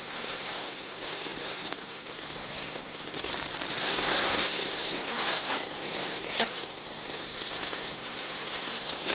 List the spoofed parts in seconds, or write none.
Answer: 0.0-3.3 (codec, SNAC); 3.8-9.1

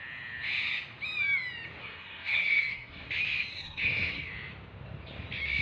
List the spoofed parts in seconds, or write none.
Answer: 1.8-3.1 (codec, SNAC); 3.5-4.3

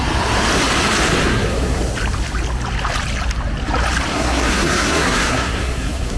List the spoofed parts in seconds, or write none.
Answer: 1.3-1.8 (codec, SNAC); 4.1-6.2

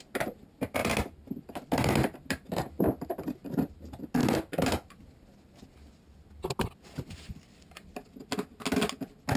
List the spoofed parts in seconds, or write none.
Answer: none

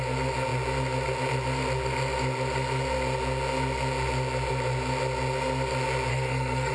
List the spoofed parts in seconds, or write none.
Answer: 6.1-6.7 (codec, SNAC)

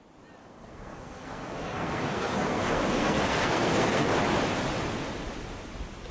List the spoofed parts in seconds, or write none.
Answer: 0.4-4.1 (codec, SNAC)

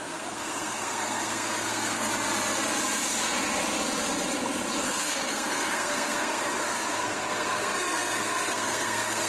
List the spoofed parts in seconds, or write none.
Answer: 0.0-2.1 (codec, SNAC); 4.8-9.3